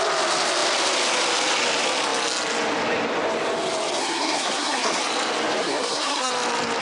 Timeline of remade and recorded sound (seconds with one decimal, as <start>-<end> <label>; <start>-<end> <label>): 0.0-4.0 recorded; 4.0-5.0 remade; 5.0-5.6 recorded; 5.6-6.3 remade; 6.3-6.8 recorded